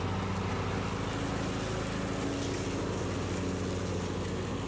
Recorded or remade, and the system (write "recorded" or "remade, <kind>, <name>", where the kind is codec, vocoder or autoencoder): recorded